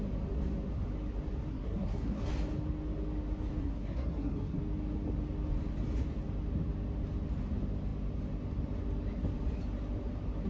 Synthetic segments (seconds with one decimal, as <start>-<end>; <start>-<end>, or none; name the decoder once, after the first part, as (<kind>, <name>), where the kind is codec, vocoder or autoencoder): 1.5-2.3 (codec, SNAC); 3.6-4.6